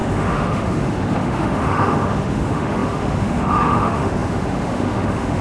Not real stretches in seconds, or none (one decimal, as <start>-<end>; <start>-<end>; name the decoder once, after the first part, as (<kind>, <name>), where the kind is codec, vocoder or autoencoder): 0.0-5.4 (autoencoder, DAC-VAE)